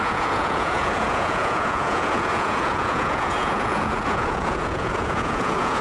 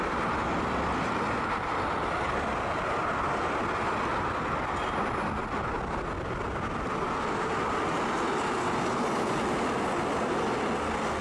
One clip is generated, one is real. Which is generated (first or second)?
first